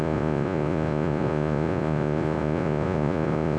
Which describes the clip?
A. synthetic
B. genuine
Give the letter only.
A